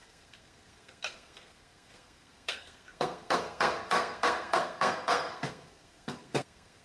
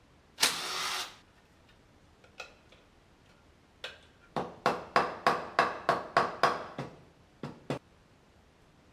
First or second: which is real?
second